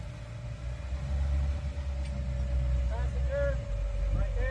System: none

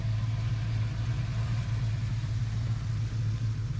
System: none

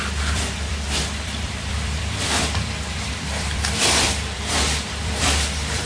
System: vocoder, BigVGAN v2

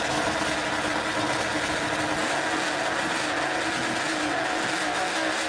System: none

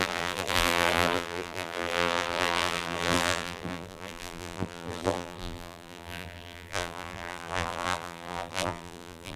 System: vocoder, BigVGAN v2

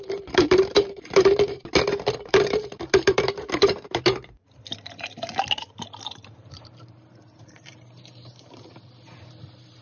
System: vocoder, BigVGAN v2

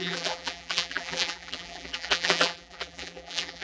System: vocoder, BigVGAN v2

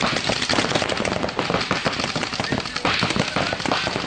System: none